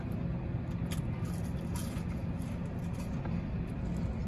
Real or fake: real